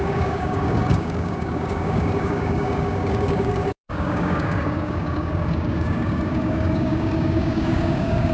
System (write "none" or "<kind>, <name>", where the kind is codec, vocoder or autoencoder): codec, DAC